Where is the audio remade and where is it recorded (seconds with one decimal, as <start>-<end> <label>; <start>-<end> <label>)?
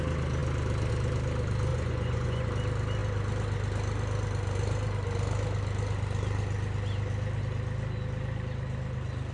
0.0-1.7 recorded; 1.7-2.5 remade; 2.5-9.3 recorded